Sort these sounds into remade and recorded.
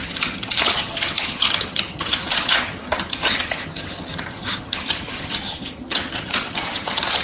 remade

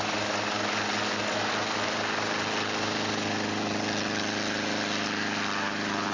recorded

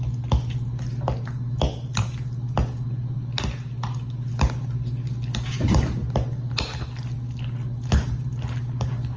recorded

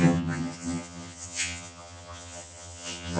remade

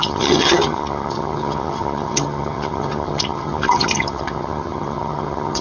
remade